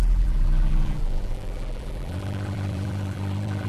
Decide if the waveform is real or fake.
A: fake